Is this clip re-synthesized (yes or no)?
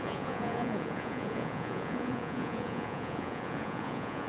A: yes